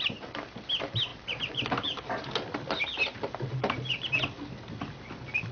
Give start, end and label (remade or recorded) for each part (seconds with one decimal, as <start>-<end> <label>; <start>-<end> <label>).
0.0-1.1 recorded; 1.1-2.3 remade; 2.3-3.5 recorded; 3.5-4.2 remade; 4.2-5.5 recorded